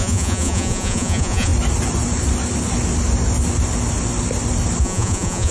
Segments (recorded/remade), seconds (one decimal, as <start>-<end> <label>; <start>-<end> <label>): 0.0-1.5 remade; 1.5-4.8 recorded; 4.8-5.5 remade